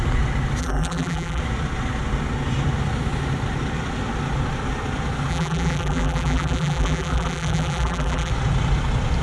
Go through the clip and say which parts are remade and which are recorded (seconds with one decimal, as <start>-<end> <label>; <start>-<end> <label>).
0.0-0.6 recorded; 0.6-1.4 remade; 1.4-5.3 recorded; 5.3-8.3 remade; 8.3-9.2 recorded